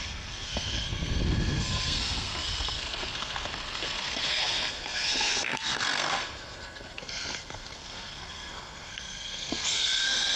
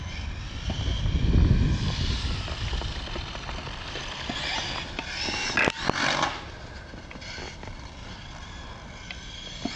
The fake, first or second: first